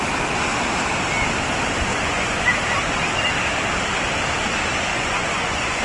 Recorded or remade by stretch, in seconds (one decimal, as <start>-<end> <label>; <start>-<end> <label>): 0.0-1.9 recorded; 1.9-2.5 remade; 2.5-4.9 recorded; 4.9-5.8 remade

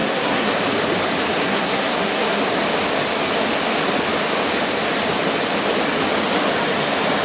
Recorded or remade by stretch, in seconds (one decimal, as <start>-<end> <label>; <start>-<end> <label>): 0.0-0.6 remade; 0.6-1.4 recorded; 1.4-2.4 remade; 2.4-7.2 recorded